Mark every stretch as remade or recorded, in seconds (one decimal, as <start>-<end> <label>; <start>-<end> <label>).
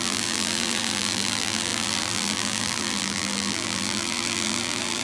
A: 0.0-5.0 remade